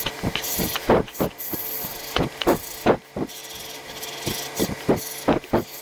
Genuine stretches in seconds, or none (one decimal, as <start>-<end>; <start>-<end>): 0.0-5.8